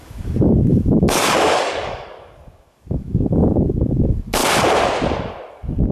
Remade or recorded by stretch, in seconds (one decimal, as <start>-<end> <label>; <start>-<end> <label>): 0.0-4.4 remade; 4.4-5.5 recorded; 5.5-5.9 remade